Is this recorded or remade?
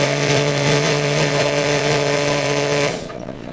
remade